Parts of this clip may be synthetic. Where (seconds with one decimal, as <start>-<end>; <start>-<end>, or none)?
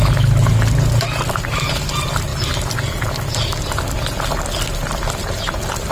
none